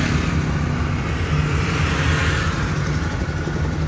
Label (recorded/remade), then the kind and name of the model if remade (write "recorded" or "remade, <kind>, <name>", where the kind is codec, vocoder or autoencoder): recorded